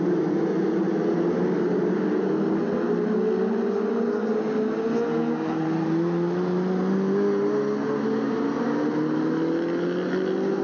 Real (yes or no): yes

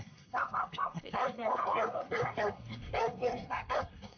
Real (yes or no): no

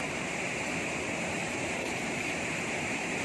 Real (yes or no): no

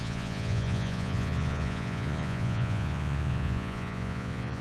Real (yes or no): no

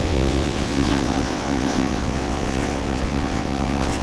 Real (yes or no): no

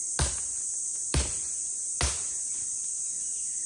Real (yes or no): yes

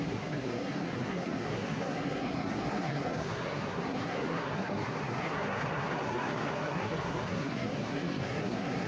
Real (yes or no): no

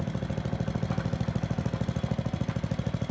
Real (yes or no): yes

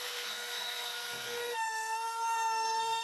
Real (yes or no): no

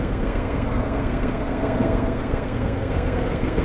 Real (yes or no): no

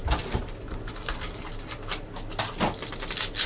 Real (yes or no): yes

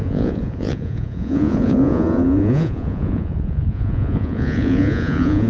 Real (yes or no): no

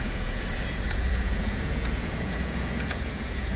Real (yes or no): no